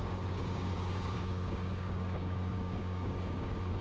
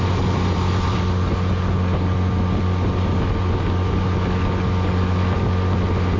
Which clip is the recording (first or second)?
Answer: second